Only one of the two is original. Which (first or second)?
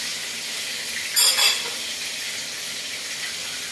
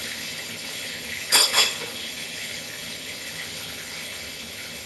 first